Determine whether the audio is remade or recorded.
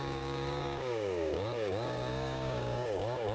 remade